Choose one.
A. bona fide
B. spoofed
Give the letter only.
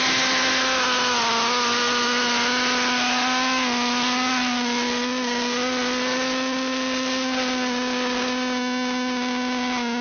A